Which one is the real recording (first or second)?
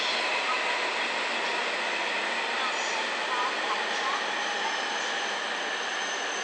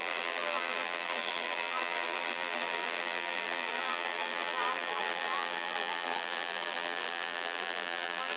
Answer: first